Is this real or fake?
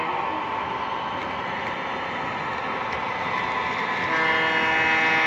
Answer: real